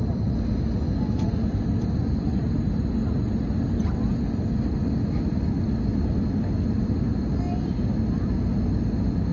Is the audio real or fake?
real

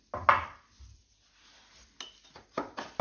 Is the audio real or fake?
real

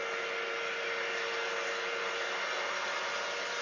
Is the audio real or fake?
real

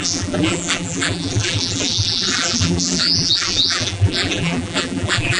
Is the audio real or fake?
fake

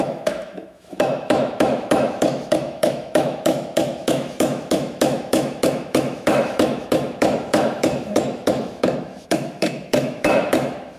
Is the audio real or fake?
fake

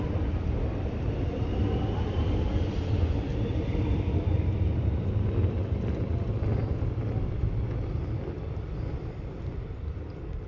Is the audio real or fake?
fake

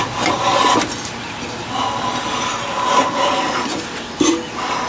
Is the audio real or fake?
real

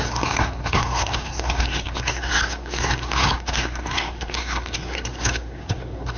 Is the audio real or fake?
fake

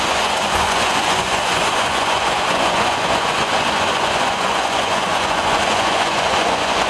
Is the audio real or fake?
fake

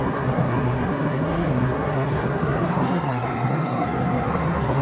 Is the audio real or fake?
fake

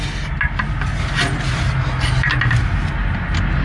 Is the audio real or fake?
real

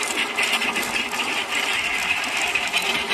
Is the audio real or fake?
real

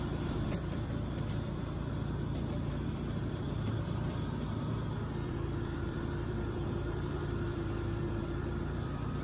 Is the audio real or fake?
fake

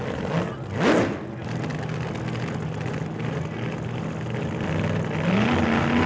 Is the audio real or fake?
real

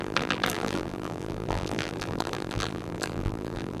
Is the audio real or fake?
fake